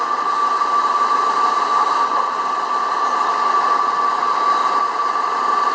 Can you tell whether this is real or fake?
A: real